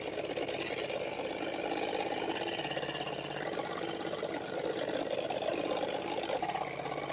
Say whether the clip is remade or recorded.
recorded